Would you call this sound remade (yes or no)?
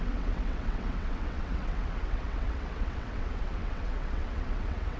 yes